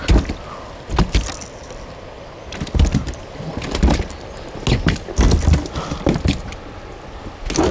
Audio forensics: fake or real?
real